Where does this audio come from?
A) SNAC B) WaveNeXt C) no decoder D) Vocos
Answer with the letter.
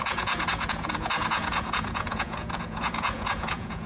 D